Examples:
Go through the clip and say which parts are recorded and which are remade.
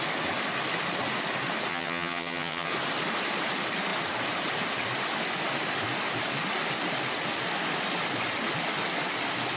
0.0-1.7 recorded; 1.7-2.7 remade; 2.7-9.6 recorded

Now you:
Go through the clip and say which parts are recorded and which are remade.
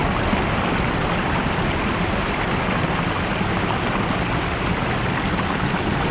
0.0-1.0 recorded; 1.0-1.8 remade; 1.8-6.1 recorded